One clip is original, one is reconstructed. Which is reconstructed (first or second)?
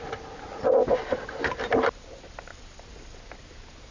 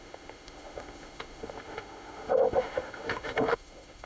second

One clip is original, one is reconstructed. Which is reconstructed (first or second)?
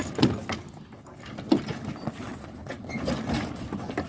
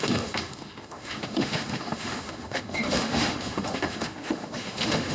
second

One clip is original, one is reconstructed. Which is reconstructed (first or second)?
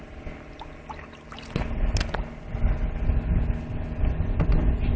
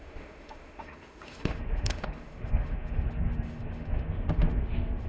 second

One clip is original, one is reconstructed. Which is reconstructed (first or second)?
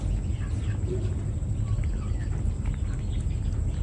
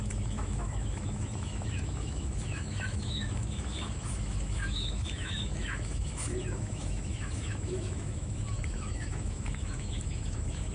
second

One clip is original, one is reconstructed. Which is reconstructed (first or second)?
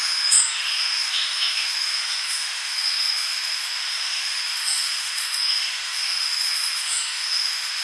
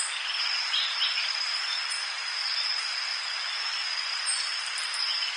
first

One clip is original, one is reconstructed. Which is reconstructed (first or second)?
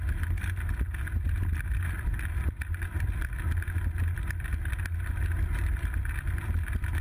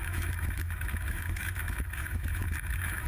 second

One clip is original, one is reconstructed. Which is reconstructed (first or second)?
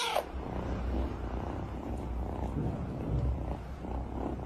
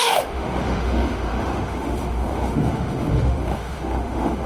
second